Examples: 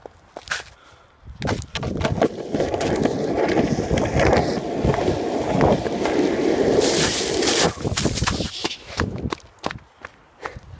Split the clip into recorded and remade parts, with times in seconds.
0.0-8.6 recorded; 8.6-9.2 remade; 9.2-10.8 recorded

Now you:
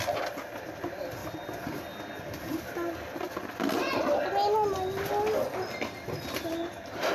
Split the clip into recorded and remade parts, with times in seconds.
0.0-7.1 recorded

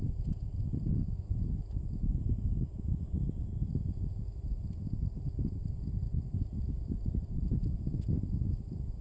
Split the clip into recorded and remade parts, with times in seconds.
0.0-9.0 recorded

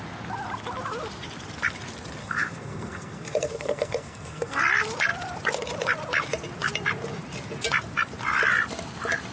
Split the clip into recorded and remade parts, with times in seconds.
0.0-2.2 recorded; 2.2-4.6 remade; 4.6-9.3 recorded

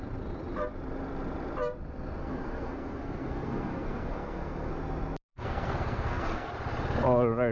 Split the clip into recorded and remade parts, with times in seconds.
0.0-2.2 recorded; 2.2-4.7 remade; 4.7-5.3 recorded; 5.3-6.5 remade; 6.5-7.5 recorded

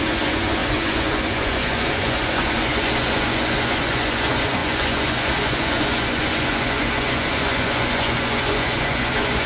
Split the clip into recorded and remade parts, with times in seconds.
0.0-9.5 remade